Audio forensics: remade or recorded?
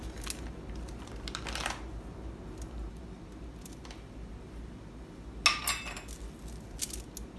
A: recorded